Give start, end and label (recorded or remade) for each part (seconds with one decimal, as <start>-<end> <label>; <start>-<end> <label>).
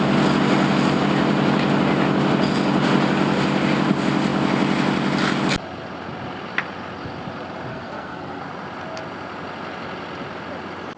0.0-7.7 recorded; 7.7-8.4 remade; 8.4-11.0 recorded